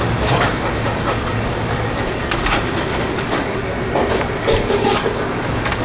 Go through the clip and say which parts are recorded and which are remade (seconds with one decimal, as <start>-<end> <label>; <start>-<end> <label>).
0.0-3.7 remade; 3.7-4.4 recorded; 4.4-5.8 remade